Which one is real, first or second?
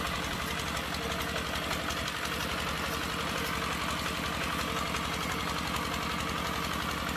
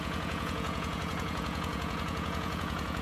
first